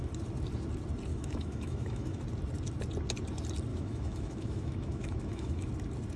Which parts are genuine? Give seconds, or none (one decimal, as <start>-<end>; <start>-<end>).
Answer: 0.0-1.1; 2.2-3.7; 5.7-6.2